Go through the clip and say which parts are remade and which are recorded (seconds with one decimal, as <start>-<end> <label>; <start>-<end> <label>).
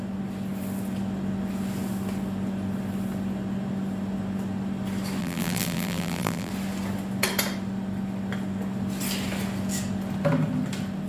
0.0-5.2 recorded; 5.2-6.5 remade; 6.5-11.1 recorded